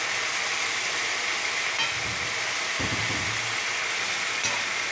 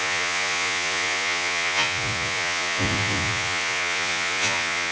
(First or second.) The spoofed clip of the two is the second